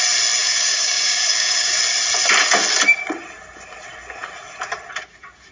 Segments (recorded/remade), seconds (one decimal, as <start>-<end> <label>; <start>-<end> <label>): 0.0-0.4 recorded; 0.4-1.8 remade; 1.8-5.5 recorded